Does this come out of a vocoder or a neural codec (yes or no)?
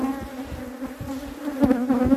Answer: no